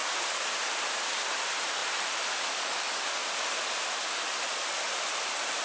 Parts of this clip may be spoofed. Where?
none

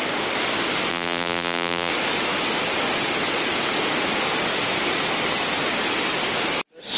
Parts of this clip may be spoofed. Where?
0.9-1.9 (vocoder, BigVGAN v2)

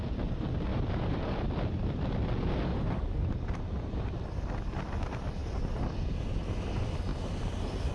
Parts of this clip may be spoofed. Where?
0.7-1.5 (vocoder, BigVGAN v2); 2.7-4.4; 7.1-7.9

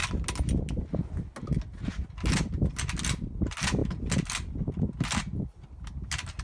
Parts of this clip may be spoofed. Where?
none